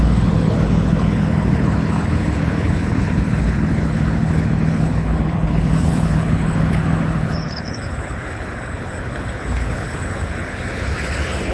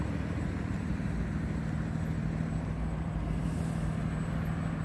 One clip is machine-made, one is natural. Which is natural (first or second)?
second